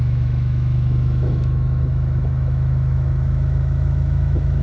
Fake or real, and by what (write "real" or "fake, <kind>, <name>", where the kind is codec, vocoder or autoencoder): fake, autoencoder, DAC-VAE